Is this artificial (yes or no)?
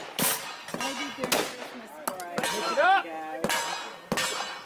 no